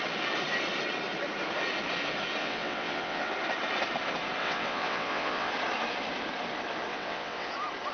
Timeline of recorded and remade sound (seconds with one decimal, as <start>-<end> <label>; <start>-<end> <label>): 0.0-2.4 recorded; 2.4-3.3 remade; 3.3-4.4 recorded; 4.4-5.5 remade; 5.5-6.9 recorded; 6.9-7.5 remade; 7.5-7.9 recorded